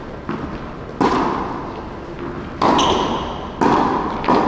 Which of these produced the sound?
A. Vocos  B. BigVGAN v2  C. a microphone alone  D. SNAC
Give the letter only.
C